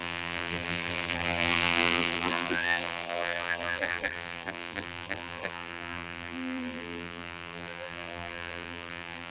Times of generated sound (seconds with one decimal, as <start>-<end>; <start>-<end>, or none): 0.0-9.3